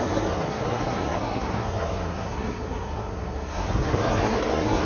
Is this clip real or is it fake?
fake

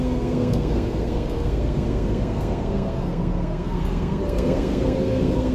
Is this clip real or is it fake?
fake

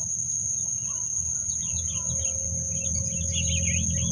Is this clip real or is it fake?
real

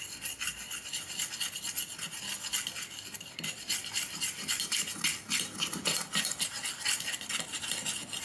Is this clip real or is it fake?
real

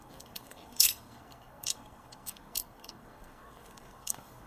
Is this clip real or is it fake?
fake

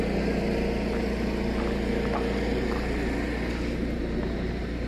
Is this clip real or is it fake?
real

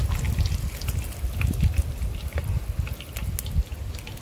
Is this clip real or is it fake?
real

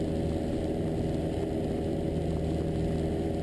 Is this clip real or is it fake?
real